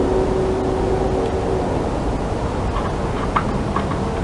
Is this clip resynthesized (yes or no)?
no